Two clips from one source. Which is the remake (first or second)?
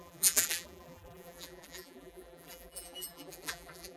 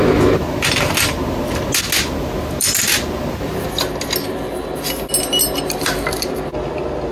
first